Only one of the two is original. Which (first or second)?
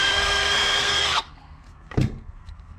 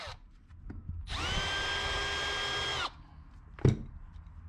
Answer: second